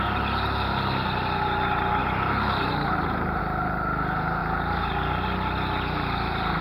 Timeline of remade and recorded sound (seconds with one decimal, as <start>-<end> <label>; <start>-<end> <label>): 0.0-2.0 recorded; 2.0-3.4 remade; 3.4-4.4 recorded; 4.4-4.9 remade; 4.9-6.6 recorded